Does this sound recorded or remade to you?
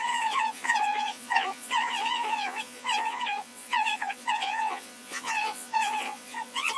remade